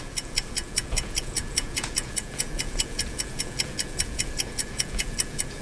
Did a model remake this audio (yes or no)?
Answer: yes